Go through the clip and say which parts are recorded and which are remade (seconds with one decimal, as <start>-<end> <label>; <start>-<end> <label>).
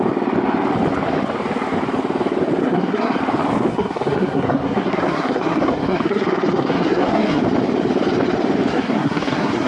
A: 0.0-2.6 recorded; 2.6-3.2 remade; 3.2-3.7 recorded; 3.7-7.4 remade; 7.4-8.7 recorded; 8.7-9.7 remade